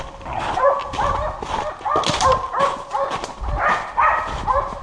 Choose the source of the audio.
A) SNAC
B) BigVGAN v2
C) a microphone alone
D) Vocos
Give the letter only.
C